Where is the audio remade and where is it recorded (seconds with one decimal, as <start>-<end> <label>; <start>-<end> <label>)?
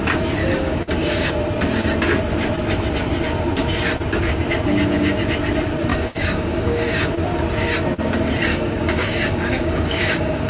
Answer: 0.0-0.4 recorded; 0.4-1.3 remade; 1.3-5.9 recorded; 5.9-7.1 remade; 7.1-8.5 recorded; 8.5-10.5 remade